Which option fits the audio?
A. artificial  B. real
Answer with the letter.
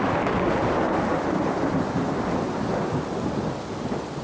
B